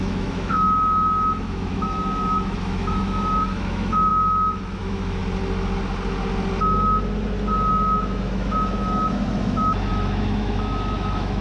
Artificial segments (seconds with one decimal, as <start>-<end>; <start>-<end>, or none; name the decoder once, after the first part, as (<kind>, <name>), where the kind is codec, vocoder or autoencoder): 0.0-5.2 (autoencoder, DAC-VAE); 7.7-11.4